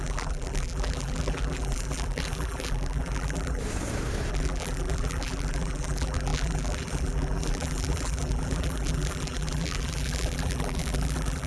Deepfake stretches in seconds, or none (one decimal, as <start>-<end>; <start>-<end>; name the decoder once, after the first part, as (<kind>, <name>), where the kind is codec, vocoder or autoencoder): 0.0-3.6 (vocoder, BigVGAN v2); 4.3-11.5